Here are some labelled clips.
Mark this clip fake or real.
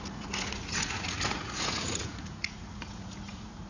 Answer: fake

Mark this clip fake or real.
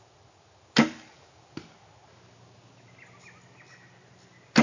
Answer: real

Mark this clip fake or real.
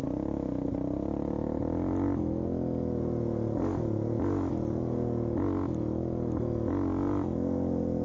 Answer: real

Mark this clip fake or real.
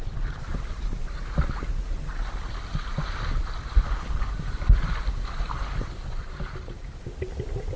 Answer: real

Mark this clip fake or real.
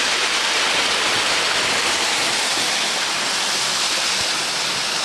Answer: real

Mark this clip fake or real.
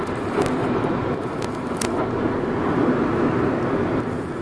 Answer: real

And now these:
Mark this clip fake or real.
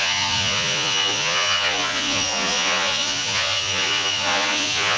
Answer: fake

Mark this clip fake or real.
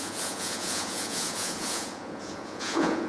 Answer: fake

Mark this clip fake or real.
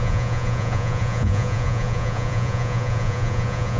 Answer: fake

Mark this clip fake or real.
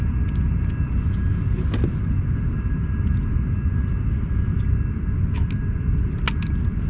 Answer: real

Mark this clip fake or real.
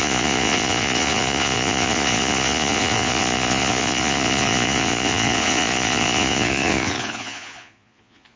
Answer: fake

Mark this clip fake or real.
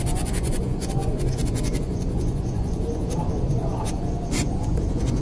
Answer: fake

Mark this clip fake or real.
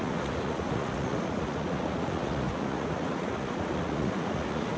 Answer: fake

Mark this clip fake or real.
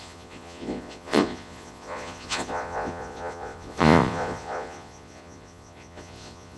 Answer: fake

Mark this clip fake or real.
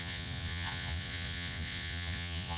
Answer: fake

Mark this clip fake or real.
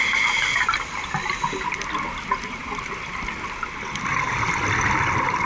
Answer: real